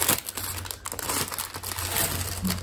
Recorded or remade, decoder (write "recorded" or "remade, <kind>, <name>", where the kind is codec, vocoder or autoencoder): recorded